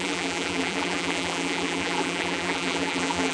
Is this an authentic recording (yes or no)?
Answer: no